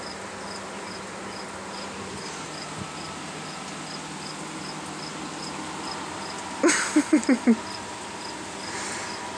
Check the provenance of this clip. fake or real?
real